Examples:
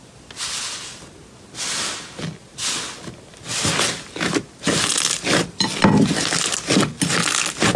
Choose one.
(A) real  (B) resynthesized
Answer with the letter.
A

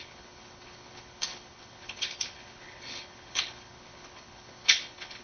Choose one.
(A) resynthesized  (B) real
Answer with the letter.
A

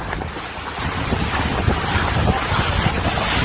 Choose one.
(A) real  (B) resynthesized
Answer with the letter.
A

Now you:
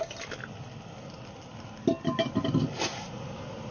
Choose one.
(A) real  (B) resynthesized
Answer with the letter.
A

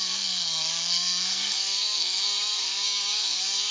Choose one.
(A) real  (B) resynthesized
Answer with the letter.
B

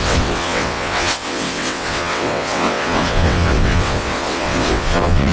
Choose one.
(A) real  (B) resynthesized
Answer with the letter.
B